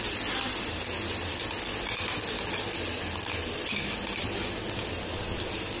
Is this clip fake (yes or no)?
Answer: no